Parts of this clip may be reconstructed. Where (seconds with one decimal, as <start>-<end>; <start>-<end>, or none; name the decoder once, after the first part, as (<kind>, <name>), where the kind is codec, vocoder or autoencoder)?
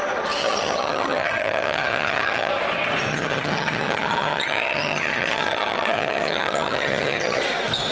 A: 0.4-2.5 (vocoder, HiFi-GAN); 3.1-7.4